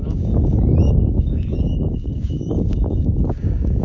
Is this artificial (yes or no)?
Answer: yes